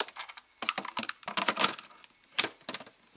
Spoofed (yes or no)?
no